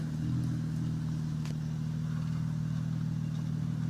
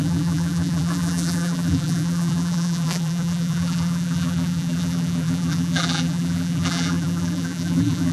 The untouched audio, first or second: first